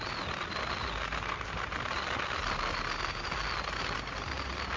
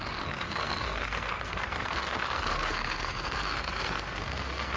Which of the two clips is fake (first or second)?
second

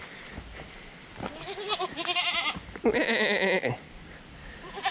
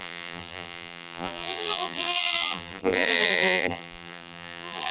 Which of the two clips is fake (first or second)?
second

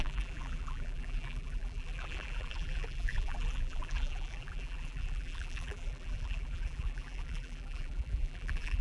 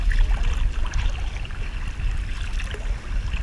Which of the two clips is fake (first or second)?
first